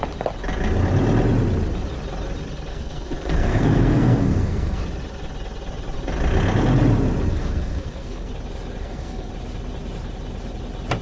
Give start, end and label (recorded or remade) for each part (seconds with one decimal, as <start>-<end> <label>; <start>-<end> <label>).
0.0-2.7 recorded; 2.7-4.8 remade; 4.8-7.3 recorded; 7.3-8.3 remade; 8.3-8.8 recorded; 8.8-9.3 remade; 9.3-11.0 recorded